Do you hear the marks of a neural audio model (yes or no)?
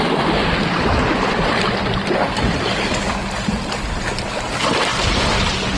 no